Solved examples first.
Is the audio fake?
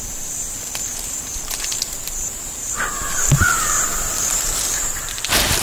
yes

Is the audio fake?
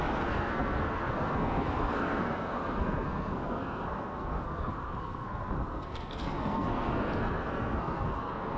yes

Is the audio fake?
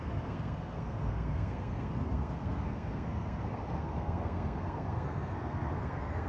yes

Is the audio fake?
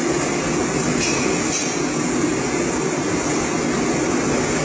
no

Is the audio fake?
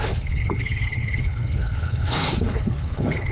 yes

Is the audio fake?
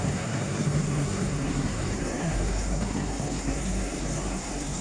yes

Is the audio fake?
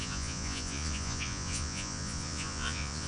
yes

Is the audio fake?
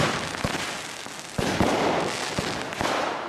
no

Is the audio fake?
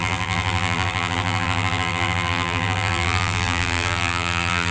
yes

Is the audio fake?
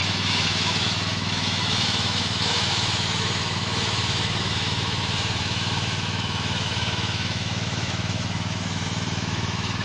yes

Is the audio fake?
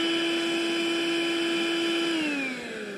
no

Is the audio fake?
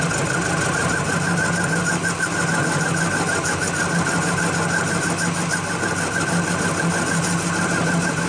no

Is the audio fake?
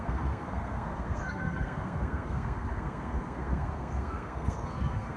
yes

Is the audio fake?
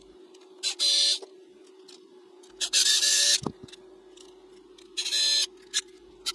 no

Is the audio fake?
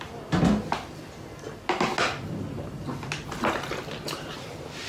no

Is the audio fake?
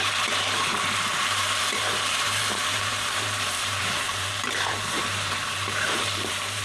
yes